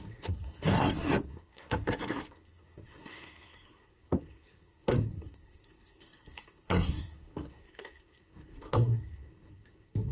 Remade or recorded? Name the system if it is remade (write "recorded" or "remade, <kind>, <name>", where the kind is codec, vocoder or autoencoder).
remade, codec, SNAC